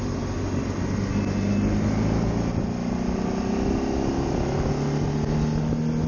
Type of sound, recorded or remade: recorded